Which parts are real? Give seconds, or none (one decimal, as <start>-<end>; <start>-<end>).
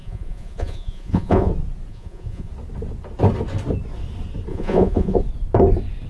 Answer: 1.5-1.9; 2.5-4.5; 5.2-6.1